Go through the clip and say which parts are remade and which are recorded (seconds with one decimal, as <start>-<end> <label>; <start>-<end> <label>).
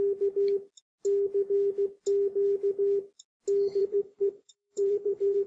0.0-3.8 recorded; 3.8-5.5 remade